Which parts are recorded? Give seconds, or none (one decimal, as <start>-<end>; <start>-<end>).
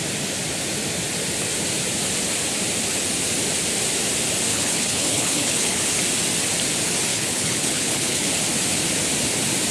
0.0-4.5; 5.8-7.1; 8.3-9.7